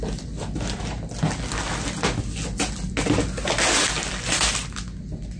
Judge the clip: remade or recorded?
recorded